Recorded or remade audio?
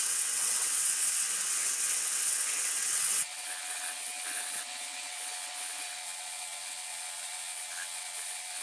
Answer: remade